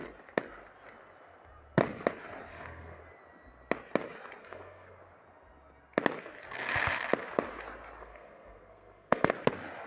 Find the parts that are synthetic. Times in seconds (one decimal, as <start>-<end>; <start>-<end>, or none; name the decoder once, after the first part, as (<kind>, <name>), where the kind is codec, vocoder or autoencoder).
2.5-3.0 (codec, SNAC); 4.4-5.0; 8.0-9.3